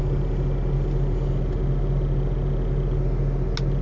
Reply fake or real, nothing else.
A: real